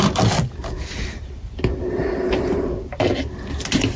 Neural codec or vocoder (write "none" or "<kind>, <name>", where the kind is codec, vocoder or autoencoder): none